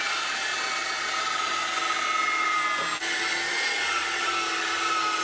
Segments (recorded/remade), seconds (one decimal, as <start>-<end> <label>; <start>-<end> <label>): 0.0-5.2 recorded

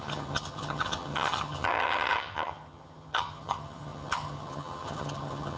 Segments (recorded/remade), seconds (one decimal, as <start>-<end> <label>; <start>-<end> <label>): 0.0-5.6 remade

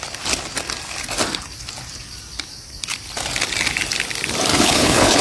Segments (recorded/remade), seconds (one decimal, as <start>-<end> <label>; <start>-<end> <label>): 0.0-4.5 recorded; 4.5-5.2 remade

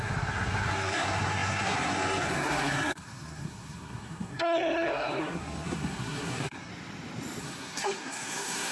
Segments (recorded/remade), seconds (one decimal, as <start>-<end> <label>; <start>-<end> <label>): 0.0-6.7 remade; 6.7-7.4 recorded; 7.4-8.7 remade

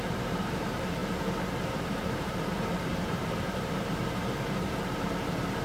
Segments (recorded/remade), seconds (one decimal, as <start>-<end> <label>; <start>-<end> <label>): 0.0-5.6 remade

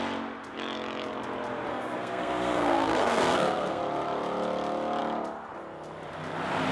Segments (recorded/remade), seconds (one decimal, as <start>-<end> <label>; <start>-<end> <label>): 0.0-1.7 recorded; 1.7-3.8 remade; 3.8-6.7 recorded

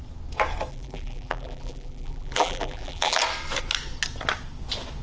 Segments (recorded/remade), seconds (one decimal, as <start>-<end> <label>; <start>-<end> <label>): 0.0-0.7 recorded; 0.7-3.2 remade; 3.2-5.0 recorded